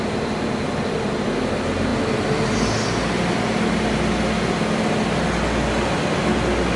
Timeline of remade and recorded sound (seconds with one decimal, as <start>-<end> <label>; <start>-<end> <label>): 0.0-6.8 recorded